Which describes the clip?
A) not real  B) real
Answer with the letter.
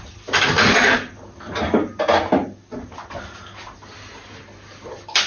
B